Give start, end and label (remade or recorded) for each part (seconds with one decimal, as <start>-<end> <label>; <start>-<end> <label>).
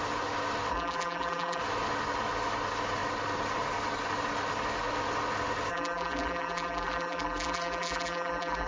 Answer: 0.0-0.7 recorded; 0.7-1.6 remade; 1.6-5.7 recorded; 5.7-8.7 remade